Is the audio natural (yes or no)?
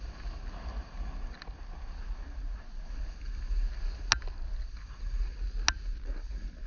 yes